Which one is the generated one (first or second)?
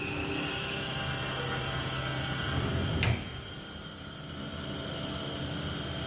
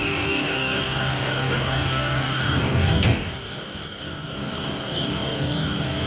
second